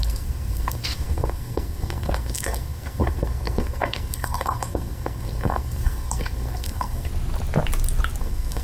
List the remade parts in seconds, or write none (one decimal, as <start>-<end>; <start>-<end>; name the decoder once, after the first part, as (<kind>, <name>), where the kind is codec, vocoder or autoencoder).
0.0-7.1 (codec, SNAC); 8.2-8.6